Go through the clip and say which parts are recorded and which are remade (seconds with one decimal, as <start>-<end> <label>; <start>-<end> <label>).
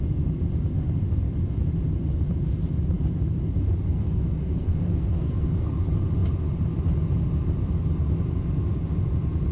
0.0-3.9 recorded; 3.9-5.7 remade; 5.7-9.5 recorded